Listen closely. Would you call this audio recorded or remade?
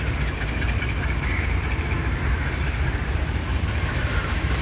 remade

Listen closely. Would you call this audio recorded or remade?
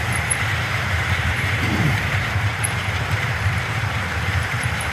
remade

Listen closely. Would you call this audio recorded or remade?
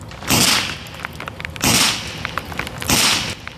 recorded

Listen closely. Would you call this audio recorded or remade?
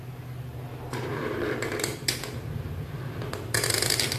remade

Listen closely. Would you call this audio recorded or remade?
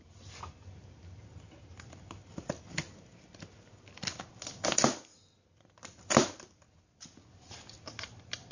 recorded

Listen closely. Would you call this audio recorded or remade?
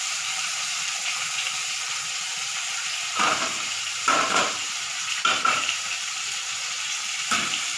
remade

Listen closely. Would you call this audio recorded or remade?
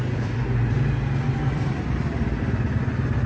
recorded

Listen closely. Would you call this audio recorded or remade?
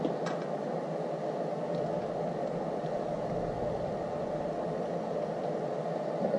recorded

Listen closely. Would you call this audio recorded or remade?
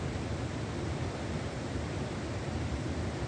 remade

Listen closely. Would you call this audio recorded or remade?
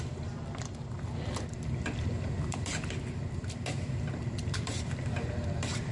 remade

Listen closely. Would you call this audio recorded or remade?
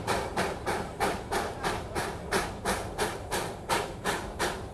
remade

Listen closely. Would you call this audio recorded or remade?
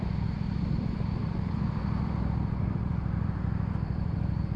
remade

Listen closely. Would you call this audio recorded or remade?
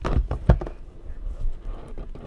remade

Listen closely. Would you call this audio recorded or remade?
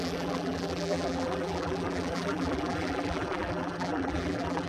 remade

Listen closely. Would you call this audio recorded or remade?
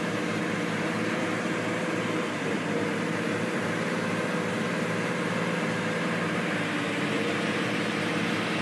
remade